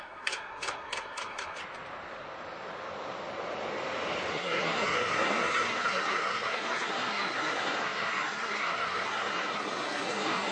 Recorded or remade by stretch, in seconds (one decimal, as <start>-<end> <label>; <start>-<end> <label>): 0.0-1.6 remade; 1.6-4.3 recorded; 4.3-10.5 remade

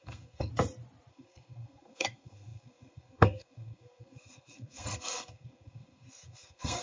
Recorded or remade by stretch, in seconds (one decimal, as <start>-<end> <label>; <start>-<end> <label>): 0.0-0.5 remade; 0.5-1.1 recorded; 1.1-6.8 remade

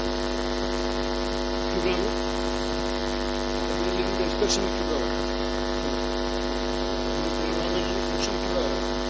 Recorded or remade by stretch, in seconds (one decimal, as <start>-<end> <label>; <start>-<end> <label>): 0.0-9.1 recorded

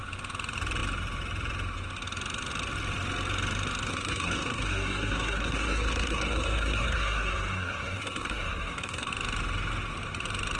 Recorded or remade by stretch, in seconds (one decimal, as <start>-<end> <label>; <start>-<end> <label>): 0.0-3.9 recorded; 3.9-9.1 remade; 9.1-10.6 recorded

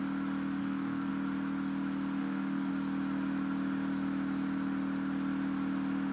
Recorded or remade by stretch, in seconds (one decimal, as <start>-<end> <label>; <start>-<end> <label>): 0.0-0.6 recorded; 0.6-1.1 remade; 1.1-2.2 recorded; 2.2-2.7 remade; 2.7-6.1 recorded

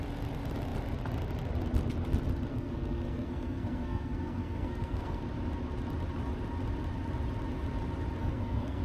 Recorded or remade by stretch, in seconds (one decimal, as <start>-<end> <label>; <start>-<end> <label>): 0.0-2.5 recorded; 2.5-5.2 remade; 5.2-8.2 recorded; 8.2-8.8 remade

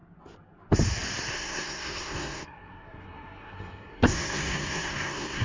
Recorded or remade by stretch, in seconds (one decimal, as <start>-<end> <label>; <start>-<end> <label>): 0.0-1.3 recorded; 1.3-5.4 remade